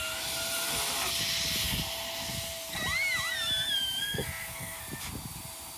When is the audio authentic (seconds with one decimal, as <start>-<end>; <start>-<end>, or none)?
0.0-4.0; 4.8-5.8